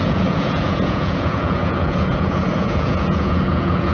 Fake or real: fake